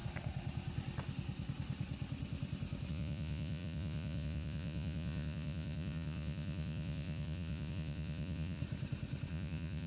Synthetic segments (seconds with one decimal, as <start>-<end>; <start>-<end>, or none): 2.9-8.6; 9.3-9.9